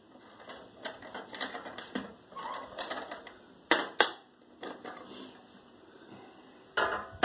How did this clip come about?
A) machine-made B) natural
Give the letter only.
B